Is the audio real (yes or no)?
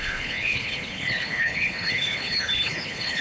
no